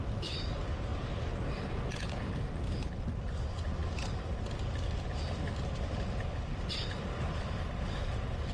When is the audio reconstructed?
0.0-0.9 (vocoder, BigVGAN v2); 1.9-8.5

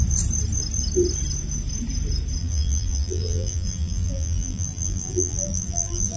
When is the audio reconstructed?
2.4-6.2 (vocoder, BigVGAN v2)

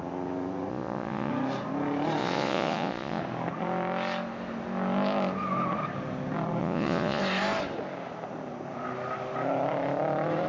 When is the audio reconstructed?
0.7-1.3 (vocoder, Vocos); 2.2-3.2; 6.6-7.2